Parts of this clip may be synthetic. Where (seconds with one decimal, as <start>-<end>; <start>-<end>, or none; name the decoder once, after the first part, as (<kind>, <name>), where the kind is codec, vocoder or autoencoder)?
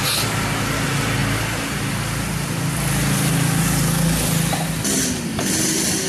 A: none